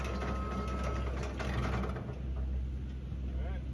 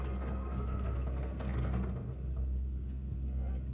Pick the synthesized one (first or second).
second